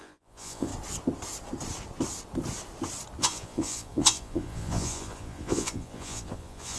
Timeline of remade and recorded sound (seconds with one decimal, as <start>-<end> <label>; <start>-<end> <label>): 0.0-0.7 remade; 0.7-3.2 recorded; 3.2-6.8 remade